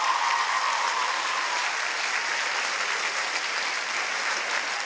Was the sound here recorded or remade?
recorded